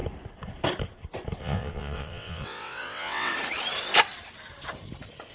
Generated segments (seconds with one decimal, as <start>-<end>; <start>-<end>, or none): 1.4-3.3